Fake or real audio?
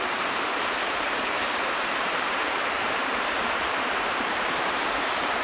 fake